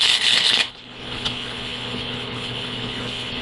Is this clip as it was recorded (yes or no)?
no